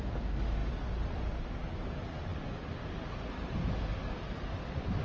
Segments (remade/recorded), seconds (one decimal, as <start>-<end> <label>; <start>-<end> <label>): 0.0-0.6 recorded; 0.6-1.4 remade; 1.4-2.3 recorded; 2.3-3.2 remade; 3.2-3.9 recorded; 3.9-5.0 remade